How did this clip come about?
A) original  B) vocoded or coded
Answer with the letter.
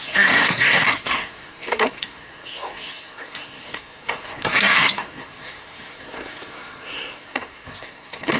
B